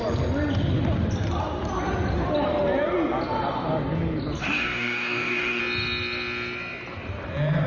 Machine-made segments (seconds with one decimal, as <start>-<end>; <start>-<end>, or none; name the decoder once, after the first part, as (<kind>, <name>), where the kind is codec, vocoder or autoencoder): 4.4-5.6 (codec, DAC)